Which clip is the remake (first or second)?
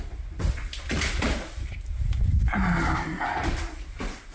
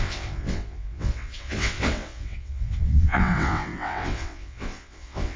second